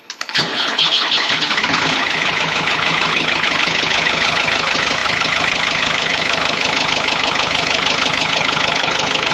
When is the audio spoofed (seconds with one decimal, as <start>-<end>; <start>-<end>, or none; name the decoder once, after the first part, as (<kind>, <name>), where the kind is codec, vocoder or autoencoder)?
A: 0.0-9.3 (codec, HILCodec)